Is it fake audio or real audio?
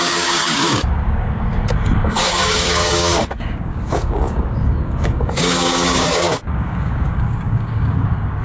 fake